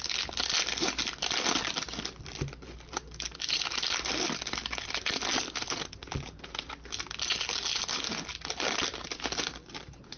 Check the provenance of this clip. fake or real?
real